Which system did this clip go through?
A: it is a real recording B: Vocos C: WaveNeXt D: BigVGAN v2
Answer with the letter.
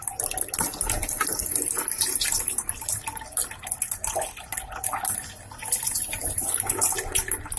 A